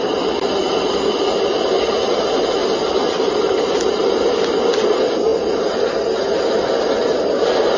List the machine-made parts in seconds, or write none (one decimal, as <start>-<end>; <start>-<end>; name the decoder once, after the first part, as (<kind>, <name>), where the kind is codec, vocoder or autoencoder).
0.6-1.2 (vocoder, BigVGAN v2)